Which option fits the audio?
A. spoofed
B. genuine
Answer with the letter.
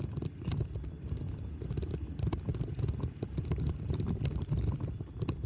B